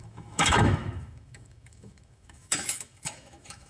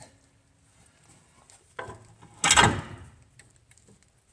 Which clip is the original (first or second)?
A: second